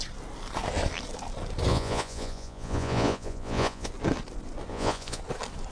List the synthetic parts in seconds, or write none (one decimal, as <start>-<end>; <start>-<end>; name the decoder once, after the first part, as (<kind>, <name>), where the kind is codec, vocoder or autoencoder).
1.7-3.9 (vocoder, Vocos); 4.7-5.2